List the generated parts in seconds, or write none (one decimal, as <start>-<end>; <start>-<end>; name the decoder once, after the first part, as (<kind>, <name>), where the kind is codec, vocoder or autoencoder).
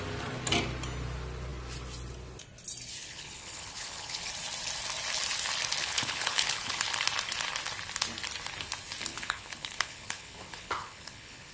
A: 3.0-4.3 (codec, HILCodec); 5.8-6.8; 9.1-11.5